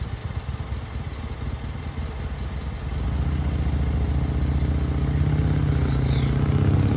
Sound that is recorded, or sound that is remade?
recorded